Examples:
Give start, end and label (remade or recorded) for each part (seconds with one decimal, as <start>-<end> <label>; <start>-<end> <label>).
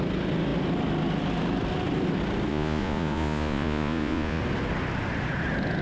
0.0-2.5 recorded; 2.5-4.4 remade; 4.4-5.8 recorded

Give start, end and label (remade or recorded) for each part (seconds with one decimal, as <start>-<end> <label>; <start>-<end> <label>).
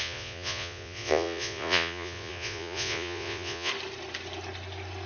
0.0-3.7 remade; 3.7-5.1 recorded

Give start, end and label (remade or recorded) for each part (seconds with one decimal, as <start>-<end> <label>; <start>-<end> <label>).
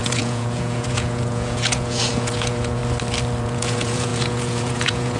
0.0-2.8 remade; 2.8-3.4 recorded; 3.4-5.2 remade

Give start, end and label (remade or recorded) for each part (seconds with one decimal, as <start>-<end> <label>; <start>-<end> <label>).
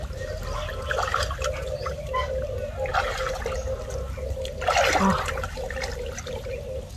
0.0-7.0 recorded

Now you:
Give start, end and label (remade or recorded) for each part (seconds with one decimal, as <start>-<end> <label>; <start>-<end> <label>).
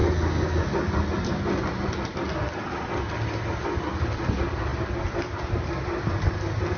0.0-6.8 recorded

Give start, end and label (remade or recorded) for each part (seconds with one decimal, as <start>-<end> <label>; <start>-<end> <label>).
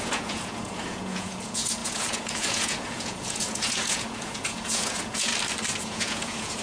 0.0-5.3 remade; 5.3-5.8 recorded; 5.8-6.6 remade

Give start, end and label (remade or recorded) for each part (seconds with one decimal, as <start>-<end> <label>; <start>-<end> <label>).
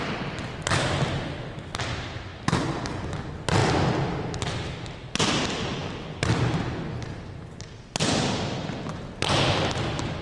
0.0-10.2 recorded